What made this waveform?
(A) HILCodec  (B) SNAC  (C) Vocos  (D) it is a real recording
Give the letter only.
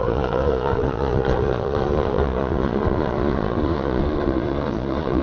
C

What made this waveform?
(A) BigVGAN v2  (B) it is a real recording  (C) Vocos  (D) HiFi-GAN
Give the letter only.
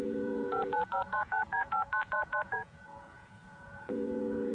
C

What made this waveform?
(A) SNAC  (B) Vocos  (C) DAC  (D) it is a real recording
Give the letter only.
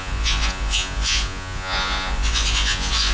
B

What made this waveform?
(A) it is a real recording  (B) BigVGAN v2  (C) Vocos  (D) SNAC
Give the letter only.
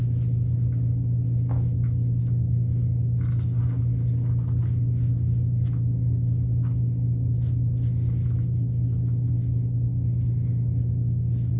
A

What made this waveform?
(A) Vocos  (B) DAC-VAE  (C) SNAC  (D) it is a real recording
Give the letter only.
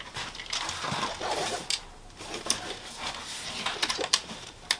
D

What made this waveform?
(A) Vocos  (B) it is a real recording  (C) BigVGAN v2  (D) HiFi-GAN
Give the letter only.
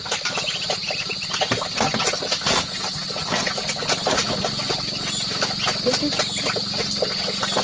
B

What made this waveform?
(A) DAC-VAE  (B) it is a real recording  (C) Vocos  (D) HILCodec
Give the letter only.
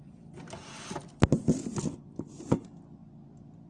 B